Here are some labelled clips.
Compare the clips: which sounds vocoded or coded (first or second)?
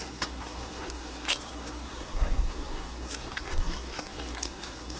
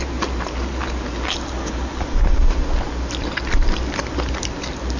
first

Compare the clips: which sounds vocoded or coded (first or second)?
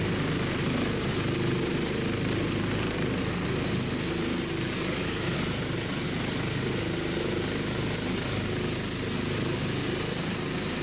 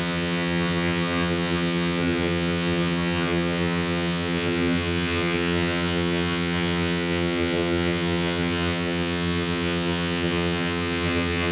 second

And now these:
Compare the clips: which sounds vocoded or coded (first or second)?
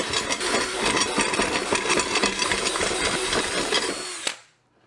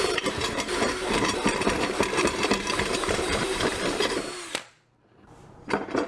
second